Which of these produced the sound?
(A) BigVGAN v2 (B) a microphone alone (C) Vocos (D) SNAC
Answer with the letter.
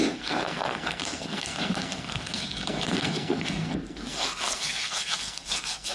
D